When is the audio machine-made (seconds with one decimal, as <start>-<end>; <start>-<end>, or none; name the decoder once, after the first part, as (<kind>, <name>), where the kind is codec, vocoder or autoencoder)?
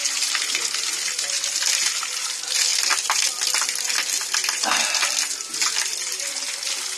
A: none